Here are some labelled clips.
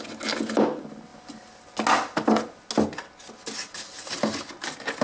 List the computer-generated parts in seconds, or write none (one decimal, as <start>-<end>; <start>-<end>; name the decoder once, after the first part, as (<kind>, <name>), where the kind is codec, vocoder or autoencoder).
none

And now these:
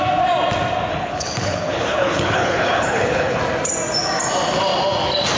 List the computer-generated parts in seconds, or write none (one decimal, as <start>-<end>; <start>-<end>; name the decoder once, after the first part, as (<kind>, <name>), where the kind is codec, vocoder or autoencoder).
0.9-3.4 (codec, HILCodec)

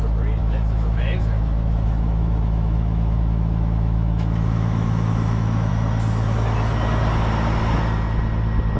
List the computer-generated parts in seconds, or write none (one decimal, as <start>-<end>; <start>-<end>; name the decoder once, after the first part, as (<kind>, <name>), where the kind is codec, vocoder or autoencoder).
0.4-5.7 (autoencoder, DAC-VAE)